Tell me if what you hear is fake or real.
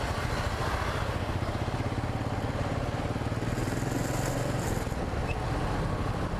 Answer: real